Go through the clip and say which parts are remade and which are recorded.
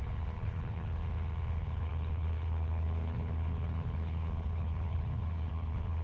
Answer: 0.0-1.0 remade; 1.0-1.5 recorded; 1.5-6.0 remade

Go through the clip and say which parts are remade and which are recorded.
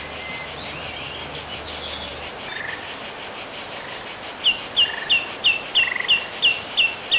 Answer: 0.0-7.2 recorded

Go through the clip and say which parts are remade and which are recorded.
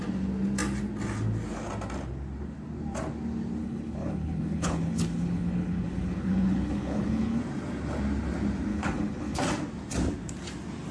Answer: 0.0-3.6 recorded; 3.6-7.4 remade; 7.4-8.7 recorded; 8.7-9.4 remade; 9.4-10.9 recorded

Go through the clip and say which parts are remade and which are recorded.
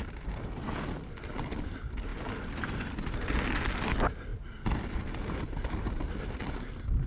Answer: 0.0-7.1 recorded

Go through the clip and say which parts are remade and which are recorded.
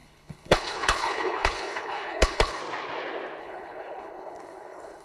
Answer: 0.0-2.6 remade; 2.6-3.4 recorded; 3.4-5.0 remade